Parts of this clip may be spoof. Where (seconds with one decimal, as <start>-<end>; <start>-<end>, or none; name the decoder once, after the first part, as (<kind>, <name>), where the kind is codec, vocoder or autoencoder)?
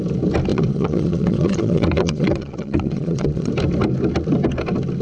0.5-3.5 (vocoder, Vocos)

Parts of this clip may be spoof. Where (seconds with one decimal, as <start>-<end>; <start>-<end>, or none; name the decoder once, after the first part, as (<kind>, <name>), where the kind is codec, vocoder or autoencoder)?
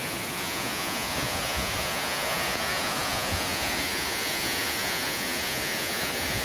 0.0-6.4 (vocoder, Vocos)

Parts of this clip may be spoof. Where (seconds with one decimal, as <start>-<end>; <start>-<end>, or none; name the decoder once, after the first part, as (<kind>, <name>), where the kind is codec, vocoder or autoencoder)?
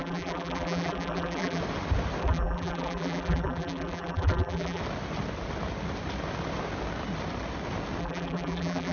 0.0-1.6 (vocoder, BigVGAN v2); 2.2-4.8; 8.0-8.9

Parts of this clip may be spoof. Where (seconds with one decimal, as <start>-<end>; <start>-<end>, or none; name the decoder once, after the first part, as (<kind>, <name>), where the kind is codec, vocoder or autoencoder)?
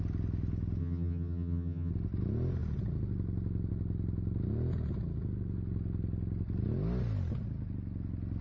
0.8-1.9 (vocoder, HiFi-GAN)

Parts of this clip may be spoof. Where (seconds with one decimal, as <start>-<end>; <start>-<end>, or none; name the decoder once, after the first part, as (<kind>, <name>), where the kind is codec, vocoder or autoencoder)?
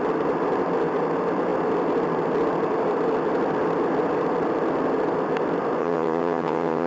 5.8-6.9 (vocoder, HiFi-GAN)